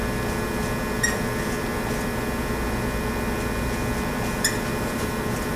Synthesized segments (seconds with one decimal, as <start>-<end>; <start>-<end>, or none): none

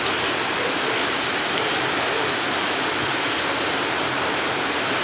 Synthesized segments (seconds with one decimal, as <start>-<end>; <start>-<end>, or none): none

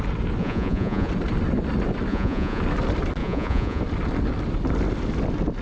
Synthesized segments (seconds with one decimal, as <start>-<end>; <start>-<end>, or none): 0.4-1.1; 2.1-2.6; 3.2-3.8

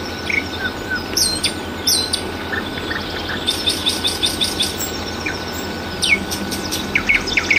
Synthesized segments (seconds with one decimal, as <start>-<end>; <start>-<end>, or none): none

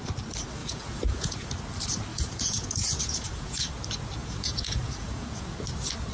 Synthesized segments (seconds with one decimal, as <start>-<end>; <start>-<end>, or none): 0.6-1.5; 2.1-3.7; 4.2-5.6

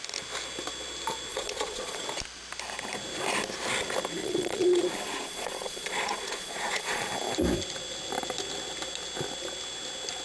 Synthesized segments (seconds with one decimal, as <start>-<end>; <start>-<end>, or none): 1.3-2.0; 4.2-7.1

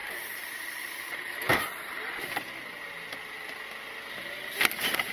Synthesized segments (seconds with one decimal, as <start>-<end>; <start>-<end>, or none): none

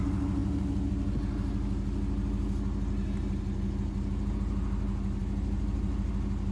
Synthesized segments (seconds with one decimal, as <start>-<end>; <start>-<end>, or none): none